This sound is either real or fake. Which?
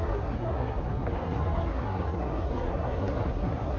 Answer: fake